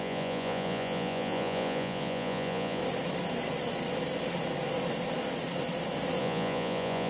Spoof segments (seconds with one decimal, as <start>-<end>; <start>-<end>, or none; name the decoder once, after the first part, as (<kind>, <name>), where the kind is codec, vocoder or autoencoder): 0.0-2.8 (vocoder, Vocos); 6.2-7.1